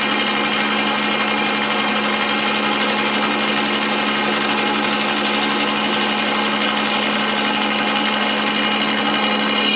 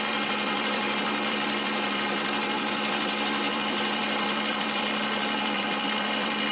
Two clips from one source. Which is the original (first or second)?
first